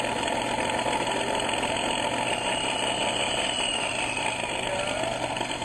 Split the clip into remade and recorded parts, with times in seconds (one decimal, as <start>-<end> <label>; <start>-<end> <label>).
0.0-5.6 recorded